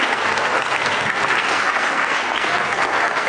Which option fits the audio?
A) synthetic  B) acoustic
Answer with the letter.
A